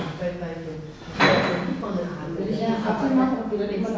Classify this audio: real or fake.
real